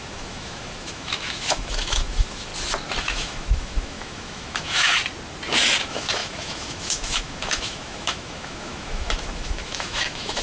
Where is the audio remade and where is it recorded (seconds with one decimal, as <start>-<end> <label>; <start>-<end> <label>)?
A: 0.0-2.5 remade; 2.5-3.0 recorded; 3.0-4.9 remade; 4.9-5.8 recorded; 5.8-10.4 remade